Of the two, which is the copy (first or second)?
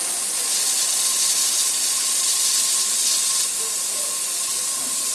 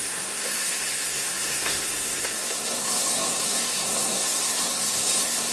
second